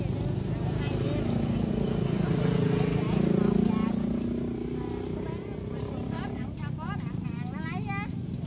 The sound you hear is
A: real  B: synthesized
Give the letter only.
A